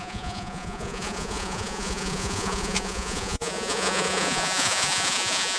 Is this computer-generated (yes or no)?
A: yes